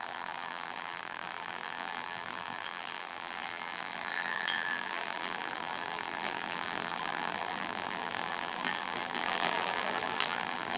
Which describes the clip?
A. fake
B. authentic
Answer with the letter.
A